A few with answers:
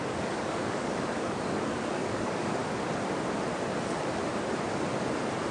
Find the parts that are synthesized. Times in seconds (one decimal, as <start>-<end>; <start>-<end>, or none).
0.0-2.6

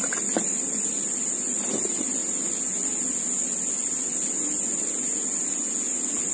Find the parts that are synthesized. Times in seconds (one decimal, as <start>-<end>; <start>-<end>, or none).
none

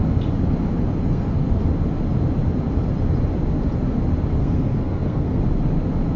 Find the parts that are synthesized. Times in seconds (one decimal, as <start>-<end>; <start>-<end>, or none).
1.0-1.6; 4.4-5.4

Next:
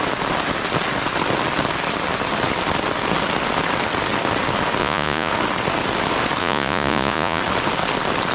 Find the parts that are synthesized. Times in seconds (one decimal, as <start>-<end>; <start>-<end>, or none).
4.8-5.3; 6.4-7.4

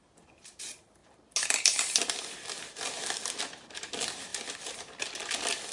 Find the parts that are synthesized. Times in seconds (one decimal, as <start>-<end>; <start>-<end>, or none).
none